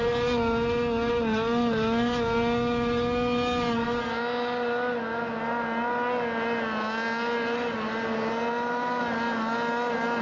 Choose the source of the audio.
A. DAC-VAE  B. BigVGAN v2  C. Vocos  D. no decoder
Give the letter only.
D